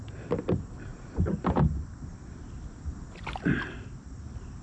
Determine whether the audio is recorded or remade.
recorded